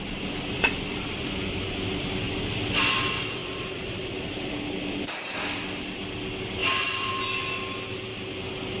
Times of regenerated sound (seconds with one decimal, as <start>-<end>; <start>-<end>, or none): 3.4-4.5; 6.6-7.1